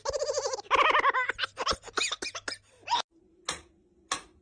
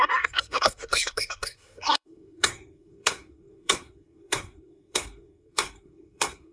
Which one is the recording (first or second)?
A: first